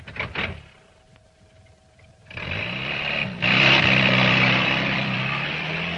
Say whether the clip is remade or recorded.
remade